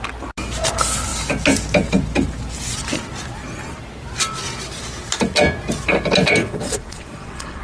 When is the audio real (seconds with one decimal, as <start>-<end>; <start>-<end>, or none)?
0.0-6.4